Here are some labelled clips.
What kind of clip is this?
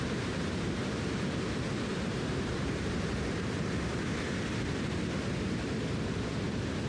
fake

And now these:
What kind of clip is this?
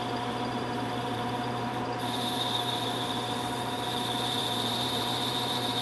fake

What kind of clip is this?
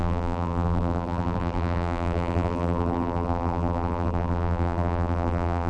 fake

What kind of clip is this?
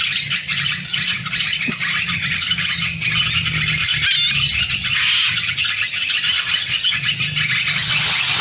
real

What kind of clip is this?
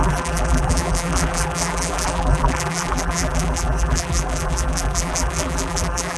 fake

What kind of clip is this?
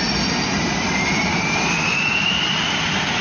fake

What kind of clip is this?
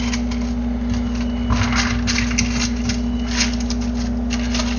real